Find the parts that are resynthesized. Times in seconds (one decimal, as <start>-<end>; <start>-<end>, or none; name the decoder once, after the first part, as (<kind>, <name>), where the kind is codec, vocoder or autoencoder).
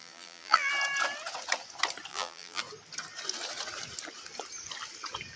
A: 0.0-0.7 (vocoder, BigVGAN v2); 2.1-2.6